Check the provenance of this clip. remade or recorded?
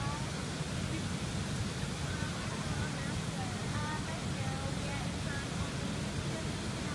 recorded